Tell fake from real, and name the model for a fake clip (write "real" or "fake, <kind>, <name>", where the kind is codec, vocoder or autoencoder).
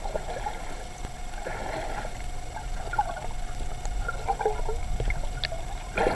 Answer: real